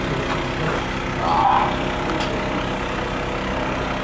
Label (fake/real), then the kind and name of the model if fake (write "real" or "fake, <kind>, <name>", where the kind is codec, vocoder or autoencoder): real